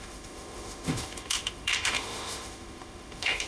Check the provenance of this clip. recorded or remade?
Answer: remade